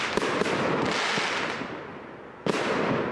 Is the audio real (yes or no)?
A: yes